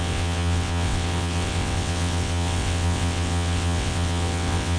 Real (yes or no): no